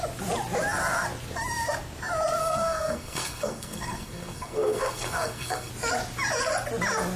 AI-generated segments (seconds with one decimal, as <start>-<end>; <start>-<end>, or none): 2.4-5.7